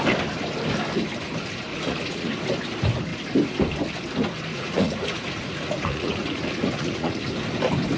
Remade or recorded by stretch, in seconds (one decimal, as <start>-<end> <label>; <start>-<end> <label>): 0.0-1.7 recorded; 1.7-2.3 remade; 2.3-4.5 recorded; 4.5-7.2 remade; 7.2-8.0 recorded